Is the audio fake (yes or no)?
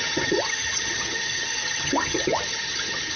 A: yes